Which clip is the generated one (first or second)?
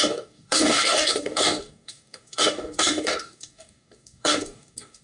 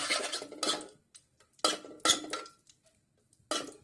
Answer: first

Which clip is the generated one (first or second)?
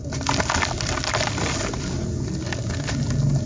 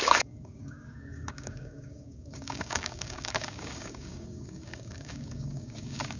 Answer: second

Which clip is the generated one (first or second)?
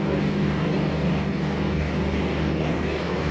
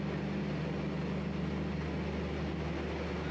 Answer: first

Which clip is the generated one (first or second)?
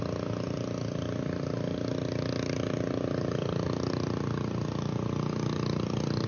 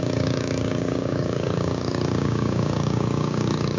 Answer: second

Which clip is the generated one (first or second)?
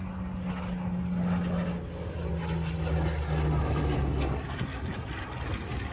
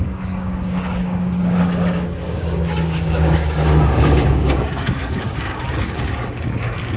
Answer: second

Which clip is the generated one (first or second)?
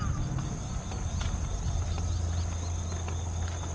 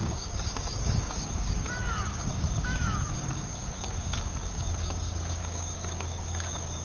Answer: second